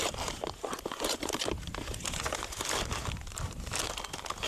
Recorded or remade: recorded